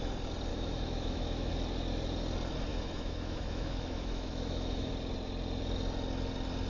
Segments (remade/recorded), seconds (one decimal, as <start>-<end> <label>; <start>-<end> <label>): 0.0-0.5 recorded; 0.5-1.5 remade; 1.5-2.7 recorded; 2.7-4.9 remade; 4.9-6.7 recorded